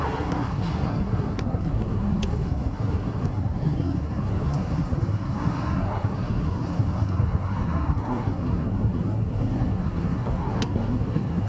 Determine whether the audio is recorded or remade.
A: remade